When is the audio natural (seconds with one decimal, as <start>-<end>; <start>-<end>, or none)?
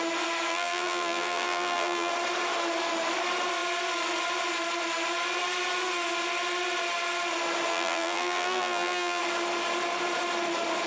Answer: 0.0-0.5; 2.1-7.7; 9.2-10.9